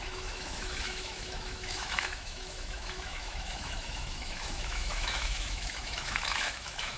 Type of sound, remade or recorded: remade